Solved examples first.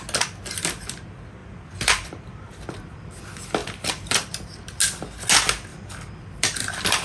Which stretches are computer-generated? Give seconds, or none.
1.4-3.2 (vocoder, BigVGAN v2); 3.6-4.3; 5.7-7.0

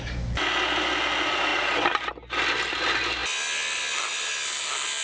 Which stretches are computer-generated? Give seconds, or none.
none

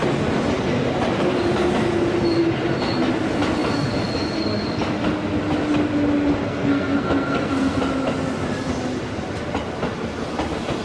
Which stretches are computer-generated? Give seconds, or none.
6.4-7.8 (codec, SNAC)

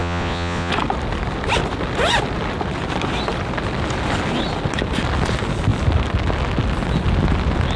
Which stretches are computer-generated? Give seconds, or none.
0.0-0.7 (vocoder, Vocos)

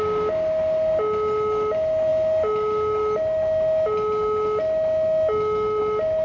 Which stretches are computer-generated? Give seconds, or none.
none